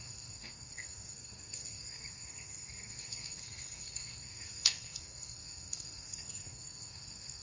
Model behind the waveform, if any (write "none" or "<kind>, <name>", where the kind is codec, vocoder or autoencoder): codec, SNAC